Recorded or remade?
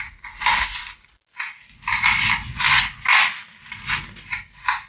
recorded